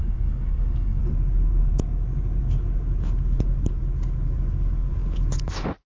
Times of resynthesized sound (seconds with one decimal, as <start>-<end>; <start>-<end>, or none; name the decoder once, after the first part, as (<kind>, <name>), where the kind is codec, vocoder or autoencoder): 0.0-1.0 (codec, SNAC)